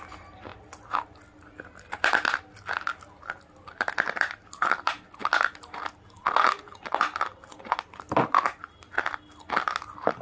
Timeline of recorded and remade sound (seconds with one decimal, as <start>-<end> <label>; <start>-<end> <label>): 0.0-10.2 recorded